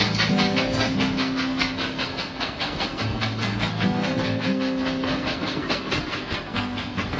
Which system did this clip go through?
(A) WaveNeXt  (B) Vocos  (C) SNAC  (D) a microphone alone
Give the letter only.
C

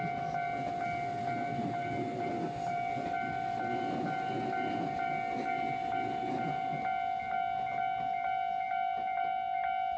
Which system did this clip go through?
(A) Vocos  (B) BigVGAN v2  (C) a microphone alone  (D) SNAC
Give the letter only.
C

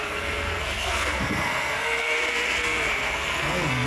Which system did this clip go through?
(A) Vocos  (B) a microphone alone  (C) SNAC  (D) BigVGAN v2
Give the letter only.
C